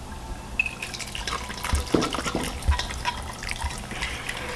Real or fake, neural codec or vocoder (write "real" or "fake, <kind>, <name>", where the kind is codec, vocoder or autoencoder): real